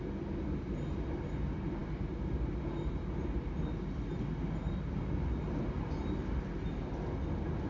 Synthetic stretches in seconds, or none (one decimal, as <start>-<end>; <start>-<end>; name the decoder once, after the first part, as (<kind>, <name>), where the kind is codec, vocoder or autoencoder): none